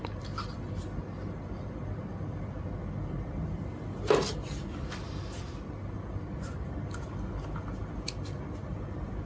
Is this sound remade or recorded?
recorded